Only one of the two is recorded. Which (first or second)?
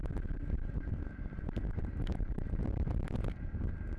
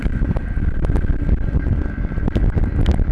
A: second